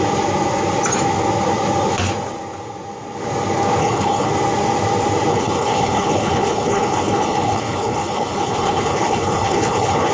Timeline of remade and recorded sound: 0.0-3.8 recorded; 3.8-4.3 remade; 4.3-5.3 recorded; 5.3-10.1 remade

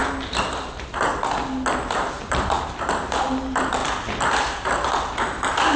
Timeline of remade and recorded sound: 0.0-5.8 recorded

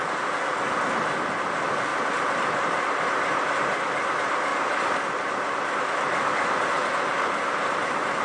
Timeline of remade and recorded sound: 0.0-8.2 recorded

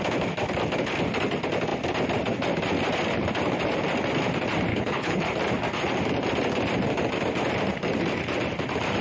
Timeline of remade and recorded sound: 0.0-4.7 recorded; 4.7-5.2 remade; 5.2-9.0 recorded

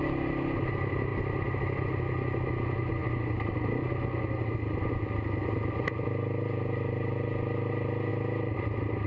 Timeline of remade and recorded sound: 0.0-9.1 recorded